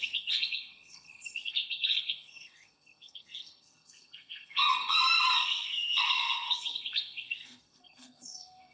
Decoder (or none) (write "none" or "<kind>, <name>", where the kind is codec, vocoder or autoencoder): codec, SNAC